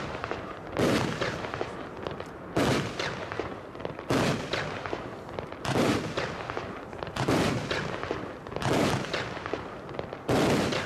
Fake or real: real